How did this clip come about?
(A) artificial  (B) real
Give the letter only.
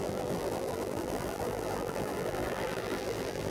A